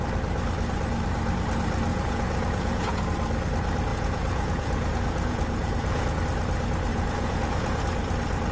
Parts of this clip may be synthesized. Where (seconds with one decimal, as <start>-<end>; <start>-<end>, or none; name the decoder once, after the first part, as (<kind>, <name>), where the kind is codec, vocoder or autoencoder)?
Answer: 1.9-3.0 (vocoder, Vocos); 3.9-6.2; 6.9-7.8